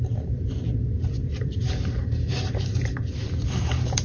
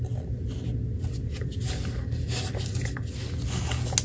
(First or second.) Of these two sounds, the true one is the second